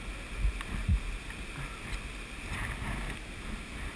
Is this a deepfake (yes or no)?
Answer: no